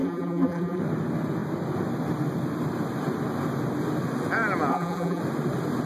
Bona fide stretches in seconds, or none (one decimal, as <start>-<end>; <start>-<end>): 0.8-4.7; 5.2-5.9